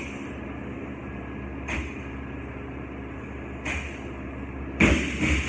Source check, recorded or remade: recorded